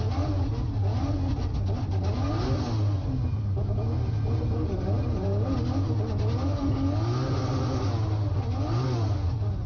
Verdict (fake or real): real